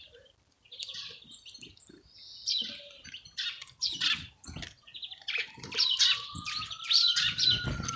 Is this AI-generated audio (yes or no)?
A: yes